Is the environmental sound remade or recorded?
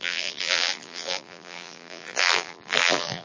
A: remade